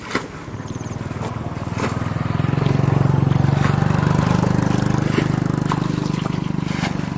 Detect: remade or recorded recorded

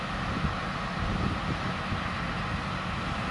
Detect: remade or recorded recorded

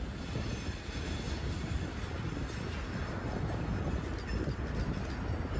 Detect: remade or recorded recorded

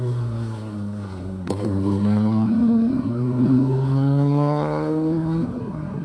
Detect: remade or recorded remade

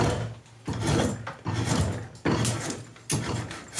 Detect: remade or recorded recorded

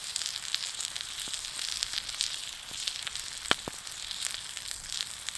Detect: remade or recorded recorded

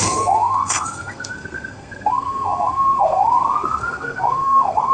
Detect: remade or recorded remade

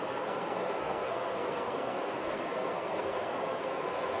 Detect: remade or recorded remade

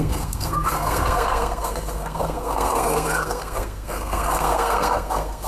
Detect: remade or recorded remade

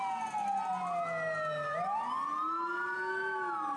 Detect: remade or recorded recorded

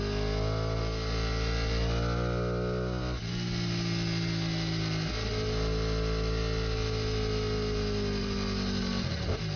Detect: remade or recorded recorded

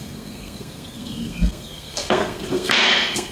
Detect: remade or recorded remade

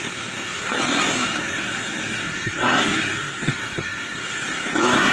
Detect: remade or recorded remade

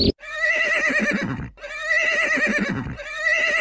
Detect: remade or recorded recorded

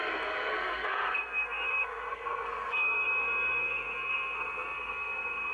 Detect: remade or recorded remade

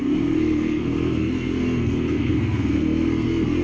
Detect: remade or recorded remade